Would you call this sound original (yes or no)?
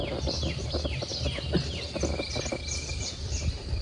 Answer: yes